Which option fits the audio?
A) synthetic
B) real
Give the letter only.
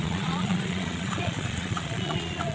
A